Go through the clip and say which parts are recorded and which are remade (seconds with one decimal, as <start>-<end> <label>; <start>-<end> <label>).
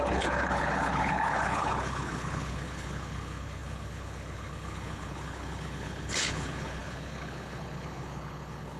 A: 0.0-8.8 remade